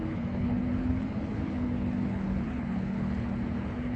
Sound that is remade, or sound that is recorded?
remade